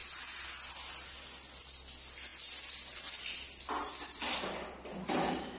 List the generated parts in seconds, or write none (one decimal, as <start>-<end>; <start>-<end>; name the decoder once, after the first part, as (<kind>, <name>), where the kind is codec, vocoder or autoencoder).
none